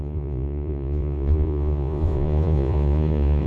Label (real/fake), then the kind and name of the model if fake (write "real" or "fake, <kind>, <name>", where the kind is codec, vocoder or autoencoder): fake, vocoder, Vocos